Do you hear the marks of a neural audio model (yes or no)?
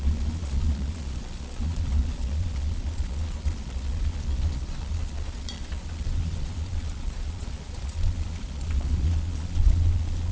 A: yes